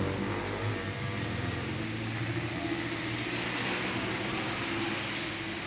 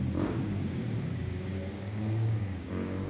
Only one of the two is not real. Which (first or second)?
second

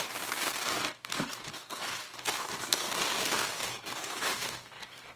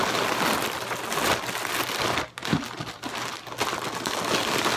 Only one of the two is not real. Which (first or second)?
first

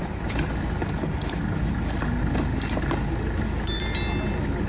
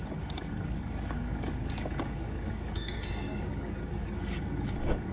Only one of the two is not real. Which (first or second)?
second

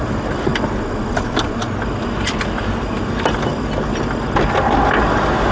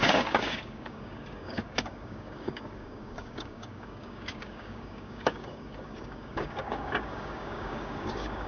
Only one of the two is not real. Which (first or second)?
second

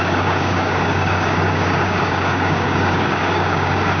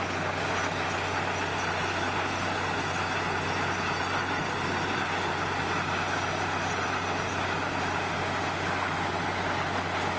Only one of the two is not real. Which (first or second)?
first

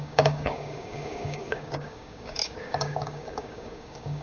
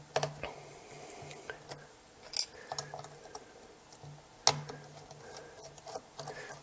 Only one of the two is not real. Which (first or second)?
first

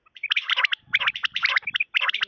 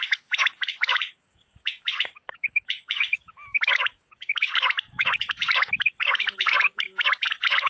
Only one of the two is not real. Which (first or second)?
second